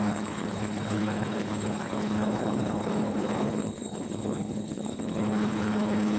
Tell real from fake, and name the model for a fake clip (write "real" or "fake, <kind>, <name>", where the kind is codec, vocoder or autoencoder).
fake, codec, HILCodec